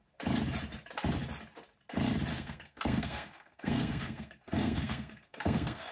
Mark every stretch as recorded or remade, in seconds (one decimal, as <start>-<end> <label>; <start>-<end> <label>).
0.0-2.3 recorded; 2.3-5.9 remade